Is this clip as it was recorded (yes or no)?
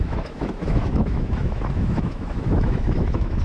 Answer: no